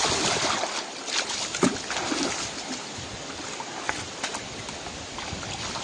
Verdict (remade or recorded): recorded